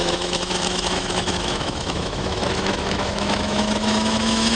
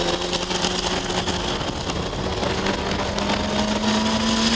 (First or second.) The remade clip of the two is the first